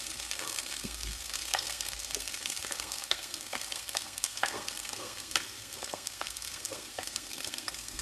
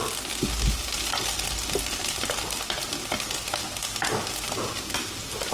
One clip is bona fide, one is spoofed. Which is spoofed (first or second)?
first